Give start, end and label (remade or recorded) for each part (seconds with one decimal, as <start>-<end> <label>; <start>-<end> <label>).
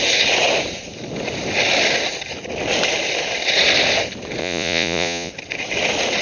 0.0-4.4 recorded; 4.4-5.3 remade; 5.3-6.2 recorded